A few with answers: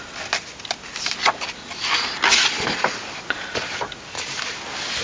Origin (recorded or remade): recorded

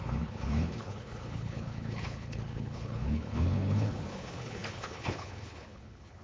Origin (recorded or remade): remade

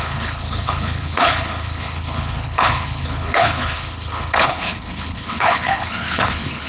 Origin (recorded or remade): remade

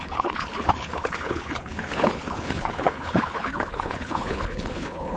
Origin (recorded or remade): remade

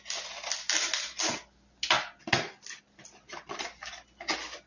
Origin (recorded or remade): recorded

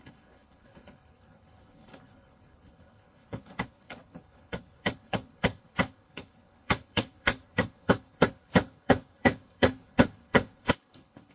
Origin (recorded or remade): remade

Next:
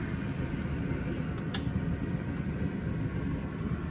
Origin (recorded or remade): recorded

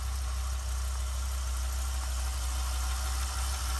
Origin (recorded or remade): recorded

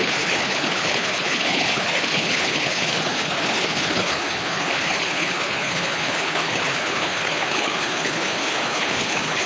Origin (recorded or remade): remade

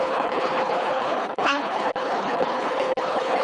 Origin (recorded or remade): remade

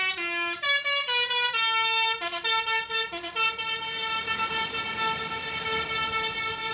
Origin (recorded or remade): recorded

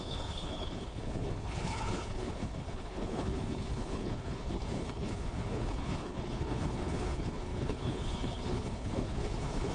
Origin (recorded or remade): remade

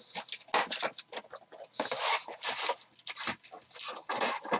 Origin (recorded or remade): recorded